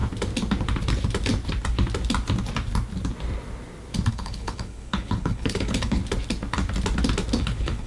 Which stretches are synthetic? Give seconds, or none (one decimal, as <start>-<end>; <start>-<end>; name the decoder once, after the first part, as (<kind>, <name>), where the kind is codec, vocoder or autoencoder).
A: 4.1-6.0 (codec, HILCodec); 7.4-7.9